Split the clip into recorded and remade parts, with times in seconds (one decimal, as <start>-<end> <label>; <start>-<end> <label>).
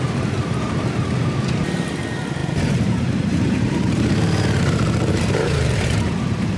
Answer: 0.0-2.4 recorded; 2.4-6.6 remade